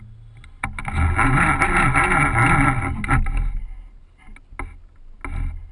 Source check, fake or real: real